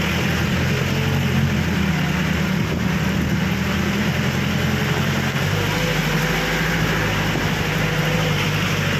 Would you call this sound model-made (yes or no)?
no